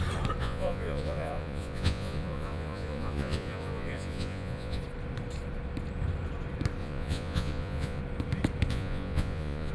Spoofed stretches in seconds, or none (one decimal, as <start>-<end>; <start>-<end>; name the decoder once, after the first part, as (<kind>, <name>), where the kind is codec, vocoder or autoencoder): 0.4-4.8 (vocoder, Vocos); 6.8-8.0; 8.7-9.7